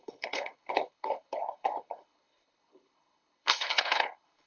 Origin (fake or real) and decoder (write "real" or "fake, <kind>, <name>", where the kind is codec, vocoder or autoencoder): fake, codec, HILCodec